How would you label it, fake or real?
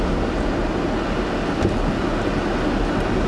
real